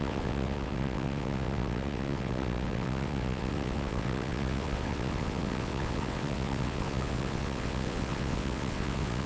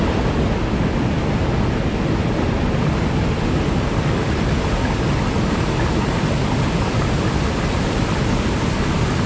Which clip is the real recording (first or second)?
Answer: second